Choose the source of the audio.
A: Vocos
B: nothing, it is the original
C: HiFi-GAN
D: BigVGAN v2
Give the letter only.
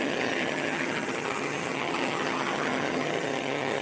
C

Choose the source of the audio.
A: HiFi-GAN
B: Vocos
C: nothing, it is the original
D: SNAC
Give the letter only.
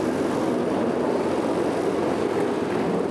C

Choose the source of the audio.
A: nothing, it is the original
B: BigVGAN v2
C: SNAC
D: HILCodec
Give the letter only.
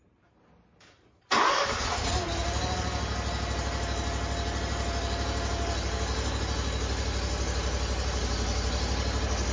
A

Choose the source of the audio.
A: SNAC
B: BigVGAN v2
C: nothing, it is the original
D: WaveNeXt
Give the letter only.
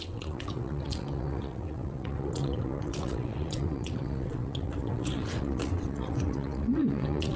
D